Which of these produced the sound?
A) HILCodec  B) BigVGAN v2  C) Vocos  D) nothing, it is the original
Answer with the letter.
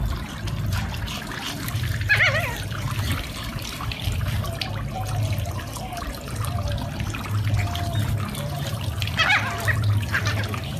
B